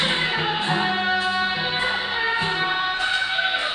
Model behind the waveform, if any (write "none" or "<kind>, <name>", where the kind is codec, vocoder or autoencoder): codec, SNAC